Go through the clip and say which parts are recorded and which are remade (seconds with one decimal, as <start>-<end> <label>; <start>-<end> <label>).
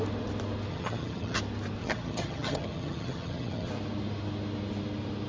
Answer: 0.0-0.7 recorded; 0.7-1.4 remade; 1.4-1.8 recorded; 1.8-3.7 remade; 3.7-5.3 recorded